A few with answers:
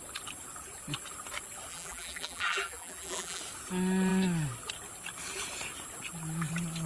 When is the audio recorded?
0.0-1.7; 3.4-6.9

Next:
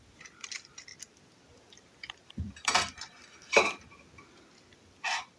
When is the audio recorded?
0.9-2.3

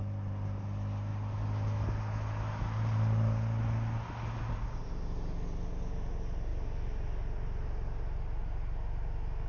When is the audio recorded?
0.0-9.5

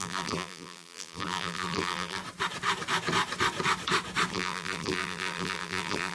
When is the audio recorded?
2.2-4.3

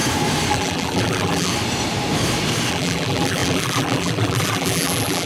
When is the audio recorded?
0.0-0.5; 1.5-2.7

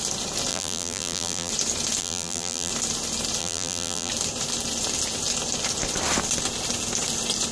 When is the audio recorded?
0.0-0.5; 1.5-2.0; 2.7-3.4; 4.1-7.5

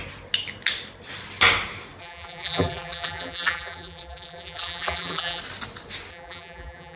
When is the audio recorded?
0.0-2.0; 5.4-6.1